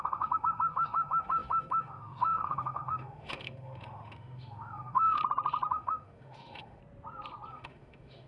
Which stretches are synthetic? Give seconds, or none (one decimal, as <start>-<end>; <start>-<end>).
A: 0.0-5.2; 5.7-6.8; 7.5-8.3